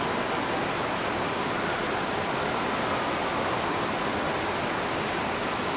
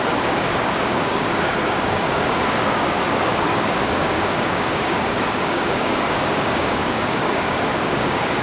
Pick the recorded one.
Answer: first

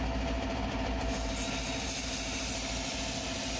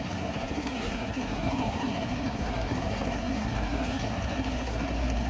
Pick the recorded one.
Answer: first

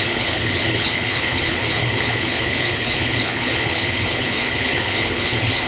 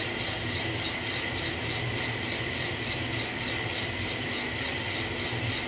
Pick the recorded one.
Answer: second